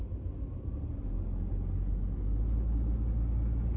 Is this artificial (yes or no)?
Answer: no